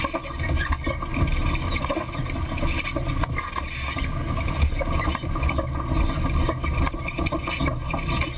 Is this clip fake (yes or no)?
no